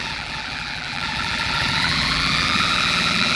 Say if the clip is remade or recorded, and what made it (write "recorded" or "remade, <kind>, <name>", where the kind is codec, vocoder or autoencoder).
remade, vocoder, BigVGAN v2